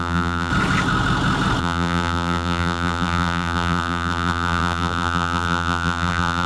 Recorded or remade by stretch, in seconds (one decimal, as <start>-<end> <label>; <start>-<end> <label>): 0.0-0.5 remade; 0.5-1.6 recorded; 1.6-6.5 remade